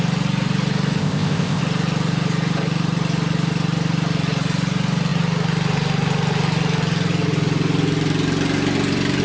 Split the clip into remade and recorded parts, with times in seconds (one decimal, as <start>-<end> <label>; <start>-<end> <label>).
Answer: 0.0-1.0 recorded; 1.0-1.6 remade; 1.6-9.2 recorded